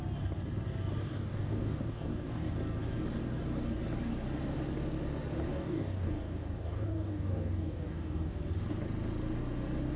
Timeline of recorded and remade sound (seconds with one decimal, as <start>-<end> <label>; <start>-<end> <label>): 0.0-1.0 recorded; 1.0-2.5 remade; 2.5-5.5 recorded; 5.5-8.4 remade; 8.4-10.0 recorded